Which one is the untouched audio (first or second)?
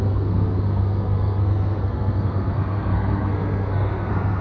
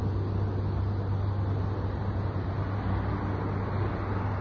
second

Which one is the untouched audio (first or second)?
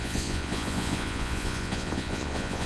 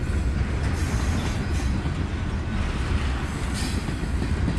second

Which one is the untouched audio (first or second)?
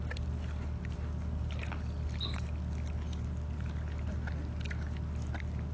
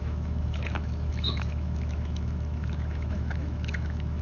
first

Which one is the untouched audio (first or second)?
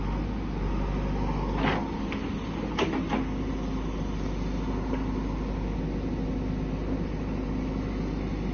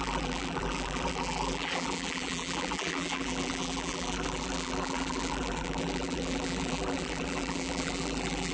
first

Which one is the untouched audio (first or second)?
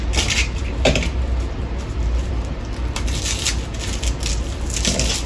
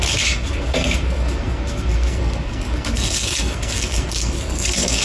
first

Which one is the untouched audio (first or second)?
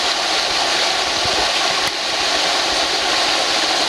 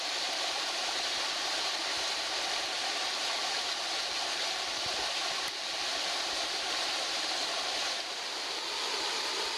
first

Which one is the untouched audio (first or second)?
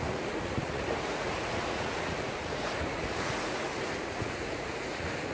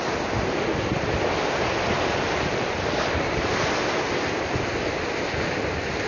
second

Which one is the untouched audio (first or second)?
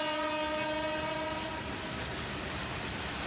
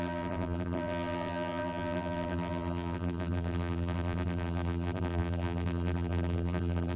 first